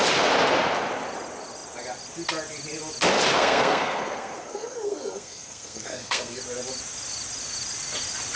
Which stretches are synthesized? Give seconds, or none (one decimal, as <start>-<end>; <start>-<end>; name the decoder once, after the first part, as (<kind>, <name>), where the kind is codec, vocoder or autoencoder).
3.4-6.4 (codec, SNAC)